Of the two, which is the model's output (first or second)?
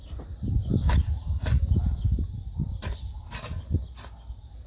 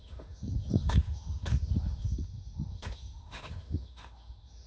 second